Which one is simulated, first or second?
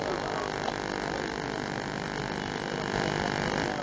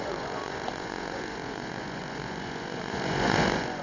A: second